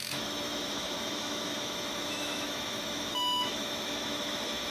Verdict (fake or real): fake